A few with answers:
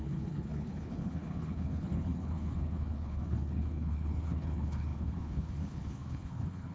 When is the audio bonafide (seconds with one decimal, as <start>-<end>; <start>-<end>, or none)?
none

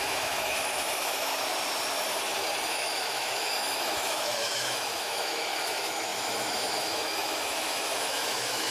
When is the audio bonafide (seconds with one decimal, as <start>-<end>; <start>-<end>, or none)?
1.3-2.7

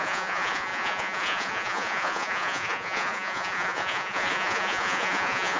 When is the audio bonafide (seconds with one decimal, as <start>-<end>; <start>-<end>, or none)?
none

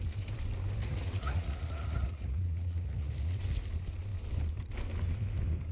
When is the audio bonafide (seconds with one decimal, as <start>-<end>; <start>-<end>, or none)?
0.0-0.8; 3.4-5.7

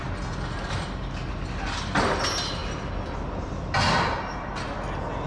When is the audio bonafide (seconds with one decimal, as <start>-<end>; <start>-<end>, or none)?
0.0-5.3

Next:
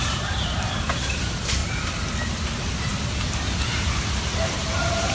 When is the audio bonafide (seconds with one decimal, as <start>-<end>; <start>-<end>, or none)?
1.6-2.3

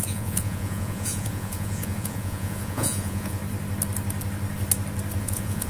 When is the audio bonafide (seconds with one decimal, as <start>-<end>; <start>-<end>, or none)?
3.4-5.2